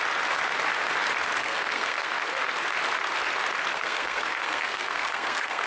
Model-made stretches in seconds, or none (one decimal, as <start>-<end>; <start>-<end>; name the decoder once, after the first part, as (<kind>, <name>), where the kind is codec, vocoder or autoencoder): 1.4-2.1 (codec, SNAC); 3.7-5.7